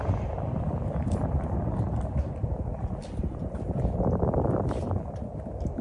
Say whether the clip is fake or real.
fake